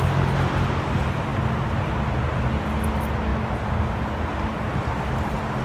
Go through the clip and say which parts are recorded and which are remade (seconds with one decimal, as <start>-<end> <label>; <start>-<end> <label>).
0.0-5.6 recorded